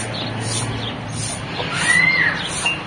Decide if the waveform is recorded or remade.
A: recorded